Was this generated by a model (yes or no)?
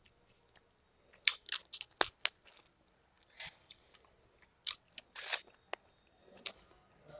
no